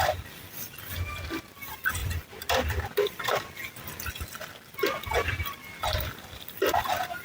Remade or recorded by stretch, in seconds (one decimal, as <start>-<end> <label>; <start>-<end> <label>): 0.0-7.2 recorded